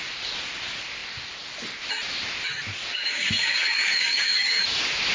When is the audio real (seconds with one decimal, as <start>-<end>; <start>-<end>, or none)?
0.0-2.9; 4.6-5.1